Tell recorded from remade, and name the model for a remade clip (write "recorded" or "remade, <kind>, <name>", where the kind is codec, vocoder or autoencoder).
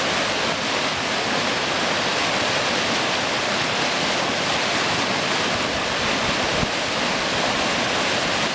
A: recorded